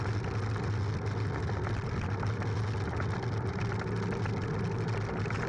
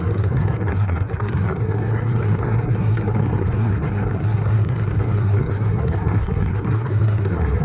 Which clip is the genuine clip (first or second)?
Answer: first